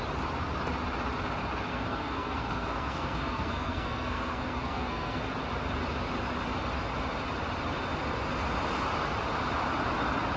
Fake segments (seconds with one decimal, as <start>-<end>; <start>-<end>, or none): 1.7-5.2